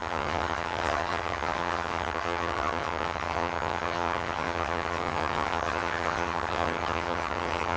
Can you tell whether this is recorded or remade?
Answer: remade